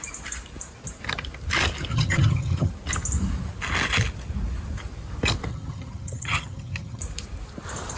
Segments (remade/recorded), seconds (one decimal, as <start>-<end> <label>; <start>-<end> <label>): 0.0-1.9 recorded; 1.9-2.7 remade; 2.7-5.5 recorded; 5.5-7.0 remade; 7.0-8.0 recorded